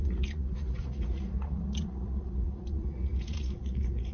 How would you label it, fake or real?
fake